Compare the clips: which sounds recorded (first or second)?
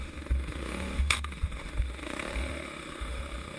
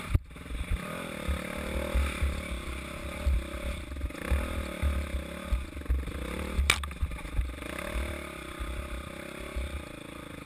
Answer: second